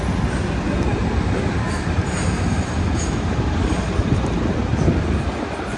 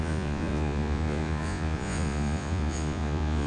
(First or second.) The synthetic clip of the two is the second